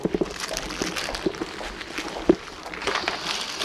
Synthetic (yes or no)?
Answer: no